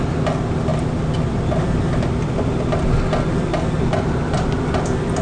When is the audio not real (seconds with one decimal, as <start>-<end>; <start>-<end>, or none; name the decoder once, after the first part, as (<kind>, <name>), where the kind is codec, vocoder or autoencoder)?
none